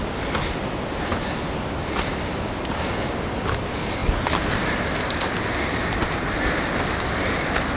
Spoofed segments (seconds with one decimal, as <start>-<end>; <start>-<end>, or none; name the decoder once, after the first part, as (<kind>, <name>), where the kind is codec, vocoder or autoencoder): 0.0-1.1 (vocoder, BigVGAN v2); 3.6-4.0; 7.0-7.8

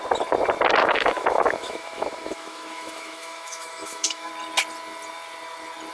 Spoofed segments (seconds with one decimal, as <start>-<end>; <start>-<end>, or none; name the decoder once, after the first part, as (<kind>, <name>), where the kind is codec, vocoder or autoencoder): 0.8-4.3 (autoencoder, DAC-VAE)

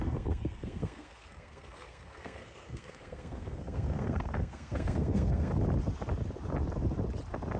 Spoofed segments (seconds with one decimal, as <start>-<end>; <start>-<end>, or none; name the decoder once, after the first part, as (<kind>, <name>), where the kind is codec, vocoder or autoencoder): 0.0-5.5 (codec, SNAC)

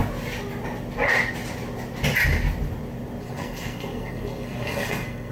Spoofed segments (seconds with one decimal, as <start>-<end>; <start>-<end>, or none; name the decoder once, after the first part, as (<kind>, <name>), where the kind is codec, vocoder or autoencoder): 3.2-5.3 (codec, SNAC)

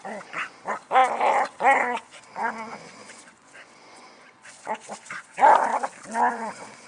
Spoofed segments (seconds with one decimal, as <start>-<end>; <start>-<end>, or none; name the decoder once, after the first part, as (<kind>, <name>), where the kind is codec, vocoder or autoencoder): 0.0-1.0 (vocoder, Vocos); 1.5-5.7; 6.3-6.9

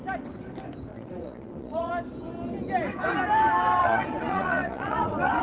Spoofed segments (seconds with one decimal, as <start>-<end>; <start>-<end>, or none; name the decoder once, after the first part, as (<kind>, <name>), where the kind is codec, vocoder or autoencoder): 0.9-1.9 (vocoder, Vocos); 3.8-5.4

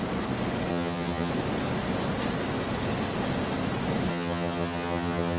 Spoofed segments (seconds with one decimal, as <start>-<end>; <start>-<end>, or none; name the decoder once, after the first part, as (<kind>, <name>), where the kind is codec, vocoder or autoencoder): 0.7-1.3 (vocoder, HiFi-GAN); 4.1-5.4